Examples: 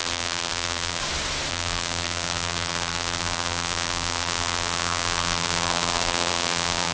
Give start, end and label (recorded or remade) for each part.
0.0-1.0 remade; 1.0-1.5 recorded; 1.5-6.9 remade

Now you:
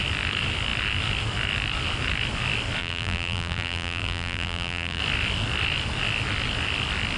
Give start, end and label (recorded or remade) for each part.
0.0-2.8 recorded; 2.8-5.0 remade; 5.0-7.2 recorded

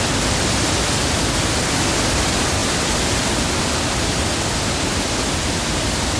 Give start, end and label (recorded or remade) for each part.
0.0-6.2 recorded